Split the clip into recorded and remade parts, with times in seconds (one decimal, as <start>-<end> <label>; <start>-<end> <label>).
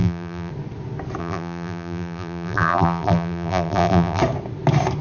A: 0.0-0.5 remade; 0.5-1.2 recorded; 1.2-4.2 remade; 4.2-5.0 recorded